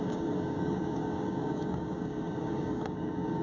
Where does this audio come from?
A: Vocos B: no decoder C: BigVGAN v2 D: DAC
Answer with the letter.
D